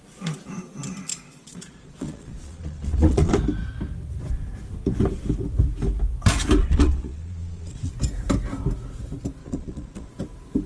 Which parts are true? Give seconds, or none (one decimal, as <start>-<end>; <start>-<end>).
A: 0.0-1.1; 3.3-6.6; 7.9-9.4; 10.1-10.7